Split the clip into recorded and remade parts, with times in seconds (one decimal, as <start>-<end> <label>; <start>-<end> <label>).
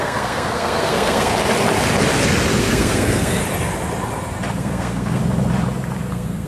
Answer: 0.0-1.3 remade; 1.3-2.6 recorded; 2.6-3.4 remade; 3.4-4.6 recorded; 4.6-5.2 remade; 5.2-6.1 recorded; 6.1-6.5 remade